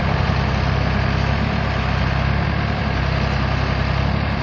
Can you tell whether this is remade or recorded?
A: recorded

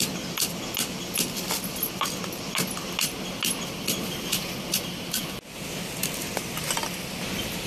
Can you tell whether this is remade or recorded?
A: recorded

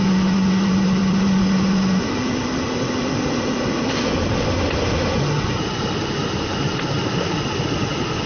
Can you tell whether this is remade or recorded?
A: recorded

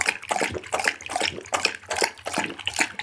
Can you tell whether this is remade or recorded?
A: recorded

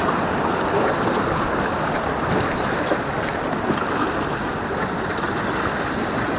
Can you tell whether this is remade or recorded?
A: recorded